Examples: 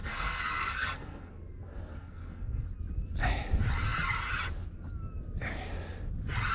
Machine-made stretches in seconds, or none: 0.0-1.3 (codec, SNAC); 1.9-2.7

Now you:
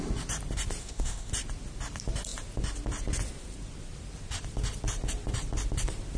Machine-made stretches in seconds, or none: 0.8-1.3 (codec, SNAC)

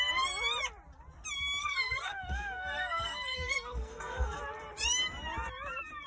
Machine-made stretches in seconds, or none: 1.6-4.4 (codec, SNAC)